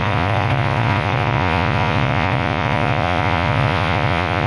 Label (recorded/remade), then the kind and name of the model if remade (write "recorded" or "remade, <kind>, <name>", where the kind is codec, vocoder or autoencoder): remade, vocoder, Vocos